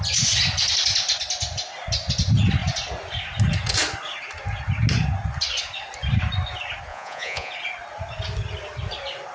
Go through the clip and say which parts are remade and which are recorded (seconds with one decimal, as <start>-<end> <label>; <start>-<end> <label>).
0.0-6.9 recorded; 6.9-7.5 remade; 7.5-9.3 recorded